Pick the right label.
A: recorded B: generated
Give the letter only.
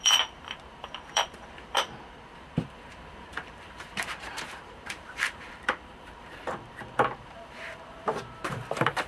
B